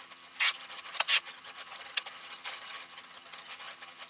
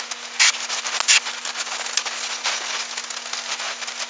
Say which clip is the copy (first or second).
first